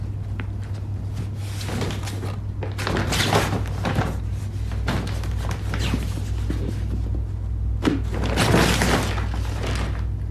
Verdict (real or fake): real